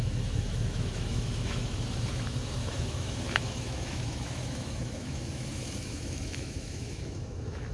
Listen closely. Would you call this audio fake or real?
fake